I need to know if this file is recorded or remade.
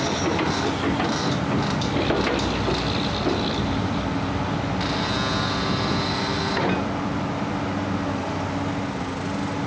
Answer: recorded